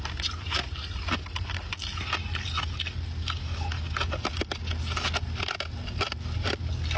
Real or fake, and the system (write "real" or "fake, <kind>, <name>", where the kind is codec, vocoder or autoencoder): real